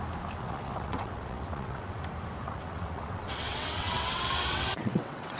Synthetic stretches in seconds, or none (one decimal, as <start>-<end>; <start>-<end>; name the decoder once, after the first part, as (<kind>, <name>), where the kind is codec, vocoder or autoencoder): 0.4-2.0 (vocoder, WaveNeXt); 2.4-5.4